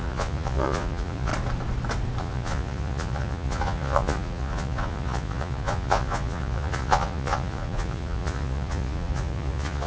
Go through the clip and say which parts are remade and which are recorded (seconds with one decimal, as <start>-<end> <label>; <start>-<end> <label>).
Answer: 0.0-1.3 remade; 1.3-2.2 recorded; 2.2-9.9 remade